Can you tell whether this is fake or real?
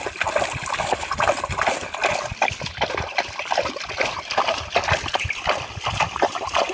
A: real